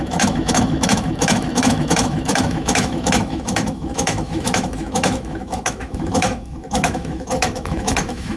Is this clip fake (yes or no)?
yes